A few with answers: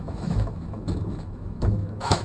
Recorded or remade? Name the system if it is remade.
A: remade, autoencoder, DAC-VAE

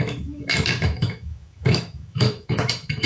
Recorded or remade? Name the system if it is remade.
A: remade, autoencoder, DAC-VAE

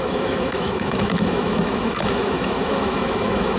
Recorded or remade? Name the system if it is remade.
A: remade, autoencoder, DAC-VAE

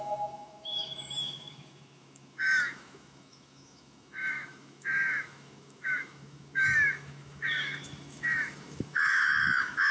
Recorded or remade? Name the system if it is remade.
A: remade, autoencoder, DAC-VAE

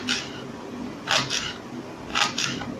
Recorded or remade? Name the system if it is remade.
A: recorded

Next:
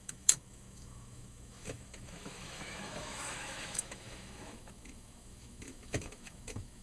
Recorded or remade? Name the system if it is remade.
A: remade, autoencoder, DAC-VAE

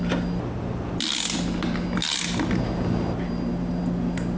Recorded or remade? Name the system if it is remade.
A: recorded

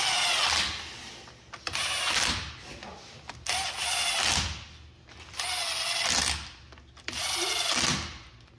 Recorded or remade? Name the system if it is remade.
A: recorded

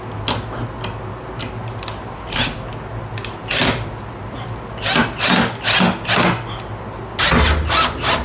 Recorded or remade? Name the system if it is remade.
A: recorded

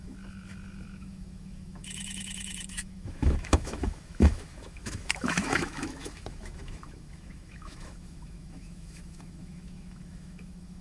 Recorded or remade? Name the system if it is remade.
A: remade, autoencoder, DAC-VAE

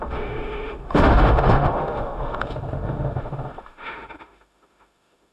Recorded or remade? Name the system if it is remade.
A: remade, autoencoder, DAC-VAE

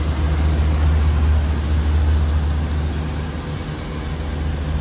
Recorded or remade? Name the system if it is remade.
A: recorded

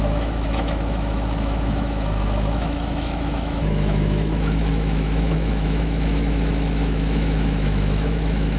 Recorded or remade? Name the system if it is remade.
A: remade, autoencoder, DAC-VAE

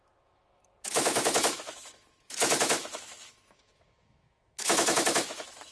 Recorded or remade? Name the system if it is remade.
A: remade, autoencoder, DAC-VAE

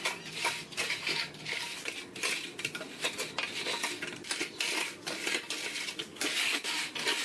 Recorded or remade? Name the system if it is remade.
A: recorded